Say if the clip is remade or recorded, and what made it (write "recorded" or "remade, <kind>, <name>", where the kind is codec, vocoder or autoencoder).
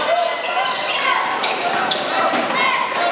recorded